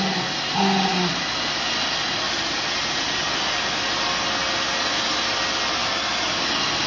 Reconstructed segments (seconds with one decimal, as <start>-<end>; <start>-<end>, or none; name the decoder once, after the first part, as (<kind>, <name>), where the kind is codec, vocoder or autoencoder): none